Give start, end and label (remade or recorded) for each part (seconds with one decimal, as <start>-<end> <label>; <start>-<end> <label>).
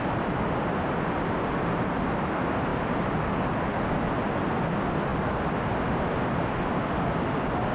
0.0-7.7 recorded